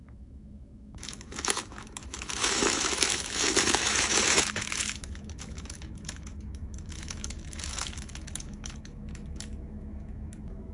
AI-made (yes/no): yes